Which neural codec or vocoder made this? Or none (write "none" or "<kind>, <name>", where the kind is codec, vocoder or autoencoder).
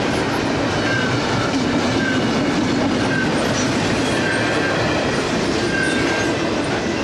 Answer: none